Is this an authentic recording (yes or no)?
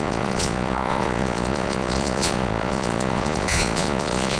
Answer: no